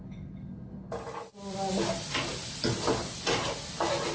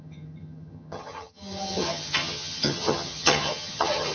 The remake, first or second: second